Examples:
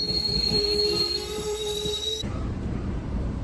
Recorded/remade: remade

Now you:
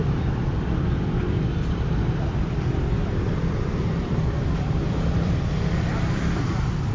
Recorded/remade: remade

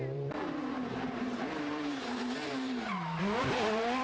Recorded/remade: remade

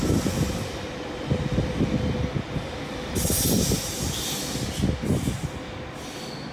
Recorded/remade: recorded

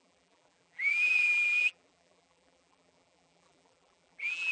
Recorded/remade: remade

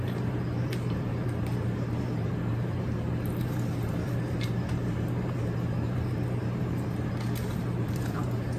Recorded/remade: remade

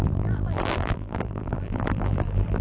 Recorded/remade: remade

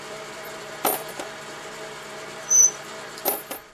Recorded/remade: remade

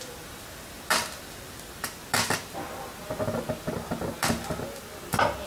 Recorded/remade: remade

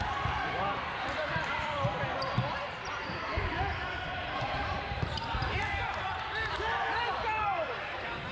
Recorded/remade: remade